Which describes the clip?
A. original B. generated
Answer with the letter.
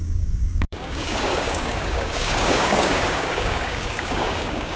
B